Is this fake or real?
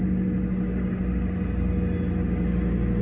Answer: real